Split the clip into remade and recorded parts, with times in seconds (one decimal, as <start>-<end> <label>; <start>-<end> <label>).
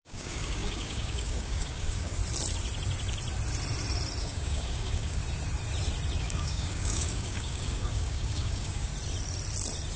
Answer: 0.0-2.2 remade; 2.2-4.2 recorded; 4.2-5.2 remade; 5.2-6.2 recorded; 6.2-8.9 remade; 8.9-10.0 recorded